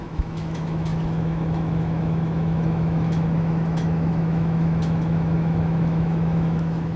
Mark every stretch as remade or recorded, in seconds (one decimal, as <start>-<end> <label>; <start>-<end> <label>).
0.0-7.0 remade